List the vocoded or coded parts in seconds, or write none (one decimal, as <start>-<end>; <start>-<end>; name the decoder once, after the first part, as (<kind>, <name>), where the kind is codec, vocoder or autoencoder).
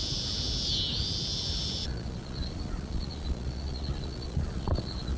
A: 1.8-5.2 (vocoder, Vocos)